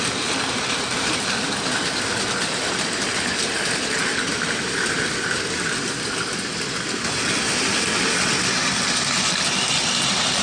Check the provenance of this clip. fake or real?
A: real